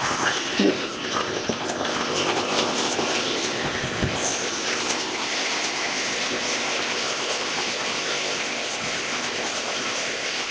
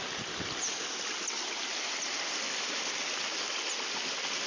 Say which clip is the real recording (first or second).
second